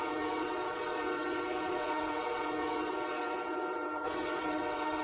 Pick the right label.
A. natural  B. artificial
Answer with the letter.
B